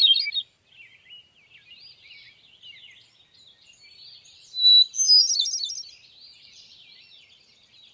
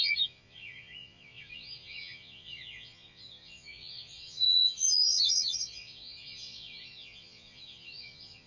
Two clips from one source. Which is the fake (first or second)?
second